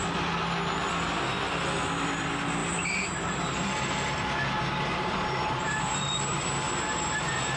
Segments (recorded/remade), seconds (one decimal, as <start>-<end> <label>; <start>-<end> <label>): 0.0-2.6 recorded; 2.6-7.6 remade